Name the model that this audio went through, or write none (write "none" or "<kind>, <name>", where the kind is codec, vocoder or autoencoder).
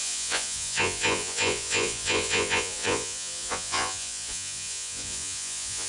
vocoder, Vocos